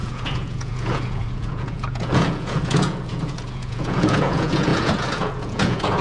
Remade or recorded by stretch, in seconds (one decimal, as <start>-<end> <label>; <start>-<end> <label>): 0.0-6.0 remade